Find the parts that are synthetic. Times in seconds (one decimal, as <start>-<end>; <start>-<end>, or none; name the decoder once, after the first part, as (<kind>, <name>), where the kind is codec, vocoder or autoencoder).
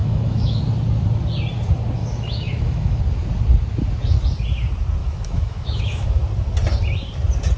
0.0-0.6 (autoencoder, DAC-VAE); 2.0-3.0; 5.0-6.2